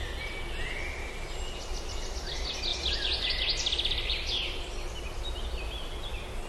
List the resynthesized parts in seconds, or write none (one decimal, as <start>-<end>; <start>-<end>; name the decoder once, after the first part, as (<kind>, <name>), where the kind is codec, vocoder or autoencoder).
2.7-3.3 (vocoder, BigVGAN v2)